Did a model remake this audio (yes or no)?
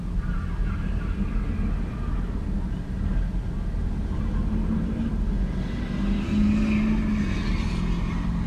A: no